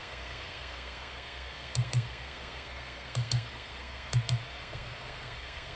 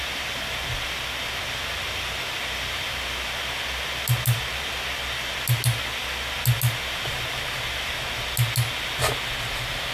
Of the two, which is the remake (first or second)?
first